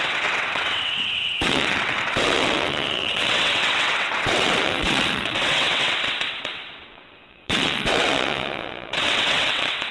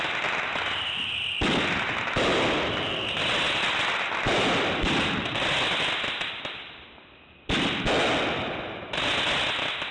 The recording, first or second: second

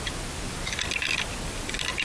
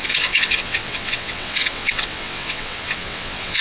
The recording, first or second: first